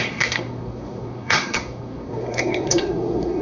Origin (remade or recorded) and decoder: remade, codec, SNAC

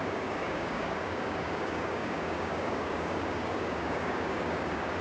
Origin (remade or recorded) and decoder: remade, codec, DAC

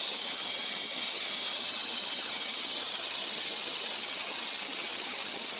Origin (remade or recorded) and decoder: remade, vocoder, HiFi-GAN